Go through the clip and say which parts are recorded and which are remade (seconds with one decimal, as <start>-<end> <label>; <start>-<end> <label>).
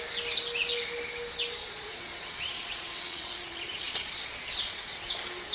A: 0.0-1.6 recorded; 1.6-4.9 remade; 4.9-5.5 recorded